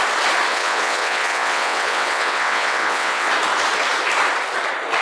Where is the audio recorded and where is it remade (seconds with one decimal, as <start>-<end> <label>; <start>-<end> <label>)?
0.0-0.5 recorded; 0.5-3.3 remade; 3.3-5.0 recorded